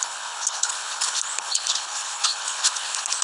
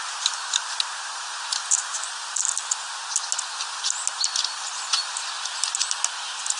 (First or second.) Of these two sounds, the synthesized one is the first